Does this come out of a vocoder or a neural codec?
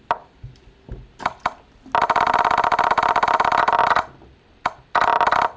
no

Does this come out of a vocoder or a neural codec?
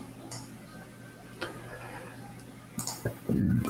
no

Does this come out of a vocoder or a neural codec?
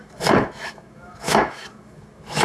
yes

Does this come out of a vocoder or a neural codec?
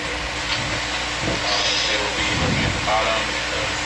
no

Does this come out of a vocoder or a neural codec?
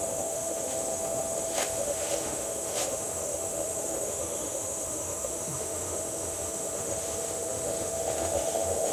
yes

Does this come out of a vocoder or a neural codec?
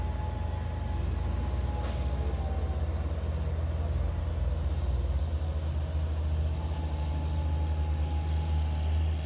no